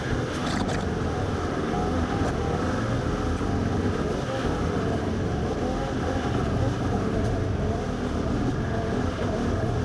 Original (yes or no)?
yes